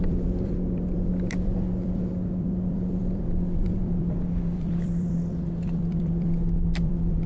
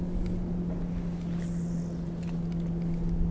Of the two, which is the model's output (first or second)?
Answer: first